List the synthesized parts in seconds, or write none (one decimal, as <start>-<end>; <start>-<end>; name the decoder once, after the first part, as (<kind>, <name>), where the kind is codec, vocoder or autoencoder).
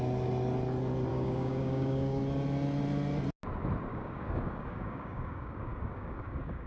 1.1-2.2 (codec, DAC); 3.9-6.7